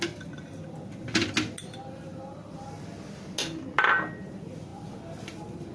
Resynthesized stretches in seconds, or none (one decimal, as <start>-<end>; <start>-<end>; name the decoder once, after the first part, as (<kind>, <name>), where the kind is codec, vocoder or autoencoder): none